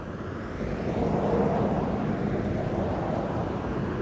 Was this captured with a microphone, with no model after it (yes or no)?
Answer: yes